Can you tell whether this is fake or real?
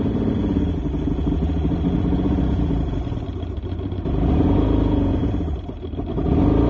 real